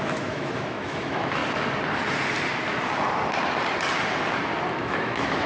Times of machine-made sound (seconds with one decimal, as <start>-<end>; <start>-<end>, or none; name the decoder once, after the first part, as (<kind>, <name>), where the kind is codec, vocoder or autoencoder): 0.0-1.4 (autoencoder, DAC-VAE); 4.7-5.5